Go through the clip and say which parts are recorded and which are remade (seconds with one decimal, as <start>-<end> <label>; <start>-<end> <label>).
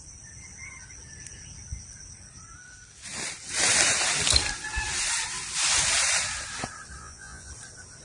0.0-7.0 recorded; 7.0-7.5 remade; 7.5-8.0 recorded